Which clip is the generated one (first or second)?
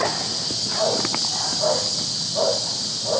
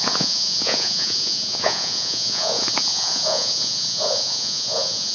second